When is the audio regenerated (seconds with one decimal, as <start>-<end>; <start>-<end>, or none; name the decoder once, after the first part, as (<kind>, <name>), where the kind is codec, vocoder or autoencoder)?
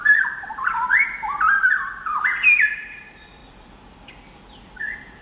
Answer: 0.0-0.5 (vocoder, BigVGAN v2); 3.0-3.4